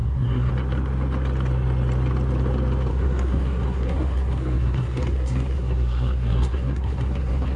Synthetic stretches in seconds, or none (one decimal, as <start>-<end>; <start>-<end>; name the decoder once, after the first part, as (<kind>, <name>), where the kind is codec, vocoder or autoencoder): 0.0-0.5 (codec, SNAC); 2.9-7.6